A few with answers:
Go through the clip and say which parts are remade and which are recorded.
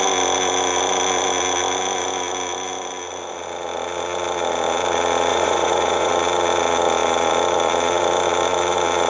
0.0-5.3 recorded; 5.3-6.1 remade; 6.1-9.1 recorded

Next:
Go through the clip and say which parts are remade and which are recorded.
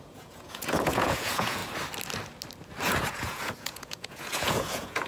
0.0-1.6 remade; 1.6-2.9 recorded; 2.9-5.1 remade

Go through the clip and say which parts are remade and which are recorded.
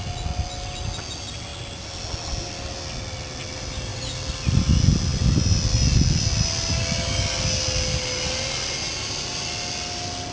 0.0-10.3 recorded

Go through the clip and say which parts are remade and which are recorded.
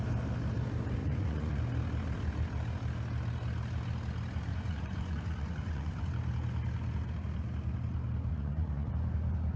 0.0-1.0 recorded; 1.0-1.6 remade; 1.6-4.5 recorded; 4.5-6.1 remade; 6.1-8.3 recorded; 8.3-8.9 remade; 8.9-9.6 recorded